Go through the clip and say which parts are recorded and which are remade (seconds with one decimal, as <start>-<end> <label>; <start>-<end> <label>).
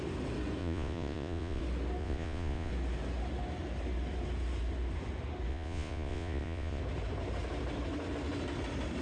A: 0.0-0.6 recorded; 0.6-1.6 remade; 1.6-2.0 recorded; 2.0-2.7 remade; 2.7-5.5 recorded; 5.5-6.8 remade; 6.8-9.0 recorded